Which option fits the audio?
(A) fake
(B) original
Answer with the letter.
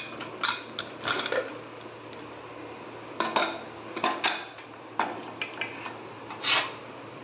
B